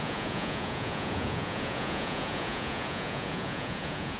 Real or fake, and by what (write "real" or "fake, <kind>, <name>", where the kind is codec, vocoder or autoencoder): fake, vocoder, Vocos